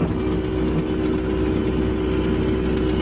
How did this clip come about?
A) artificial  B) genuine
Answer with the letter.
B